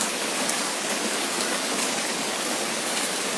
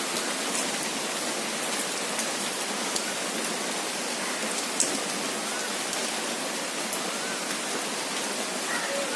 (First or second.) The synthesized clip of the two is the first